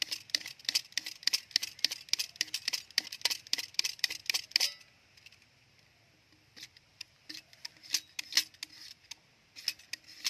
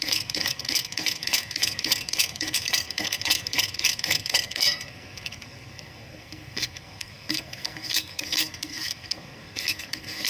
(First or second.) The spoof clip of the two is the second